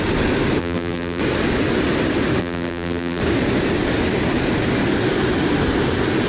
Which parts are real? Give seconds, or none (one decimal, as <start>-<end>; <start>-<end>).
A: 0.0-0.6; 1.2-2.4; 3.2-6.3